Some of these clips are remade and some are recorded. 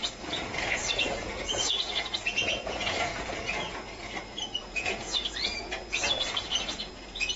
remade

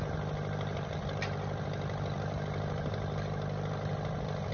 recorded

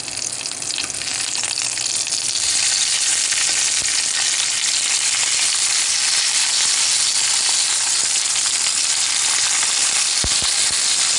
recorded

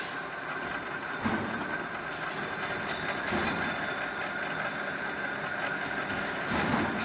recorded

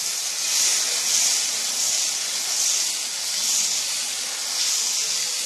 recorded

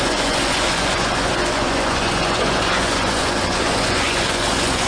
remade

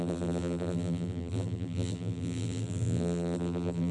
remade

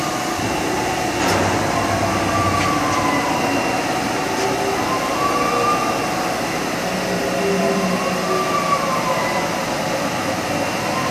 recorded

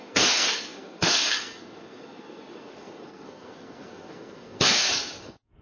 remade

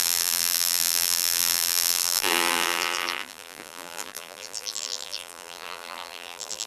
remade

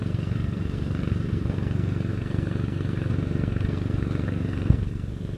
remade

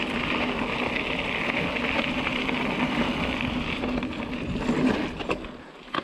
recorded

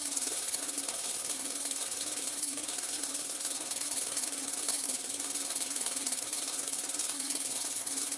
remade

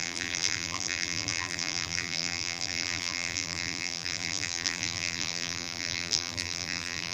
remade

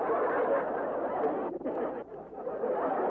remade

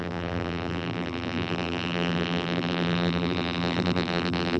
remade